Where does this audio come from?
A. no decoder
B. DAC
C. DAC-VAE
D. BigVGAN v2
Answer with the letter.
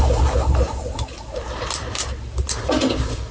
A